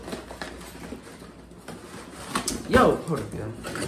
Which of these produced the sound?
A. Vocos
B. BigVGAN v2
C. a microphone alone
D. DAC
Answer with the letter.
C